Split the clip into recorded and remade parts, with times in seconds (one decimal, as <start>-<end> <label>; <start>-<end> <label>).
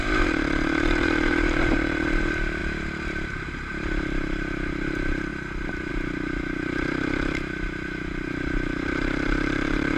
0.0-2.6 remade; 2.6-3.7 recorded; 3.7-10.0 remade